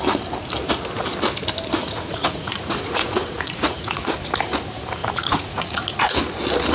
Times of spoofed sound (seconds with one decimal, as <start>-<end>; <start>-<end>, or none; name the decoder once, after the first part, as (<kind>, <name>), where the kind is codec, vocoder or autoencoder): 1.8-4.3 (vocoder, Vocos); 5.0-6.2